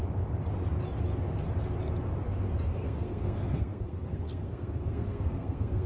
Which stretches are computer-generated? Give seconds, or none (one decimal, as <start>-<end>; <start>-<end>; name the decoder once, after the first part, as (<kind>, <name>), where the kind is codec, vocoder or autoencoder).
2.7-5.9 (codec, SNAC)